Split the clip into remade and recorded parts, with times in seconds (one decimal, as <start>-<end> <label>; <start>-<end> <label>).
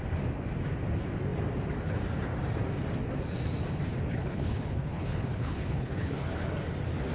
0.0-4.1 recorded; 4.1-6.3 remade; 6.3-7.1 recorded